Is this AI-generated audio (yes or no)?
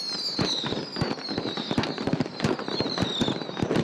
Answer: no